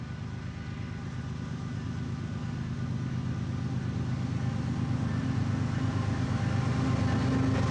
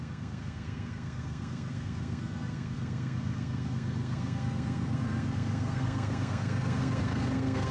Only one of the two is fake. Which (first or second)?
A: second